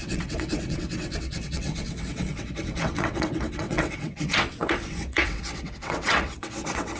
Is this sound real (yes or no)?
no